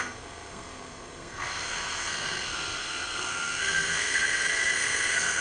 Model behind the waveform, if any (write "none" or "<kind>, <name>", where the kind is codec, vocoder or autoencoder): codec, SNAC